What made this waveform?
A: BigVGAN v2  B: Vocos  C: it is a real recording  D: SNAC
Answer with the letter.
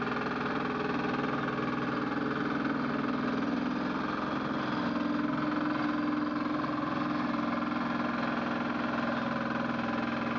C